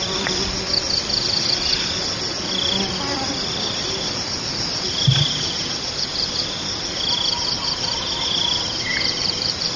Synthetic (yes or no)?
no